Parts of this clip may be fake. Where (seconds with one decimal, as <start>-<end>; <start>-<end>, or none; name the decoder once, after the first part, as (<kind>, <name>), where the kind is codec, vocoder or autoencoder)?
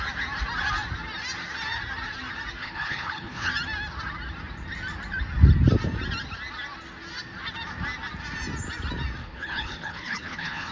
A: 2.6-3.5 (codec, HILCodec); 9.2-10.7